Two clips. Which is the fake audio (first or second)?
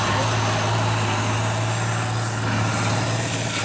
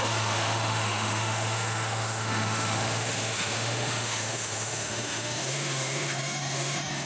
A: second